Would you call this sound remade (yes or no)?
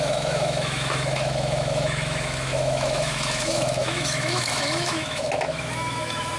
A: yes